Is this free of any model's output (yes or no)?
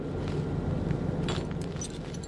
yes